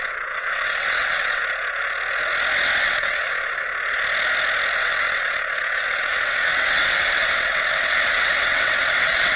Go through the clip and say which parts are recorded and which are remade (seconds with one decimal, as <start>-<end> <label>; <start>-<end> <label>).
0.0-1.4 remade; 1.4-2.8 recorded; 2.8-3.7 remade; 3.7-4.8 recorded; 4.8-9.4 remade